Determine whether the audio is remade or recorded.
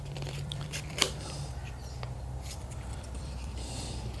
remade